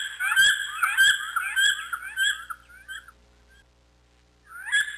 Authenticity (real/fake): real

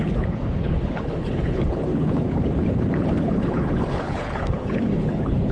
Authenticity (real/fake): fake